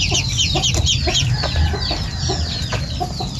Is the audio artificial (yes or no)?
no